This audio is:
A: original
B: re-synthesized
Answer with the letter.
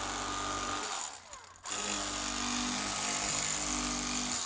A